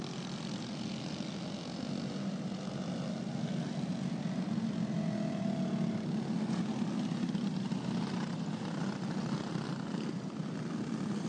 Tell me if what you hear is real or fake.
real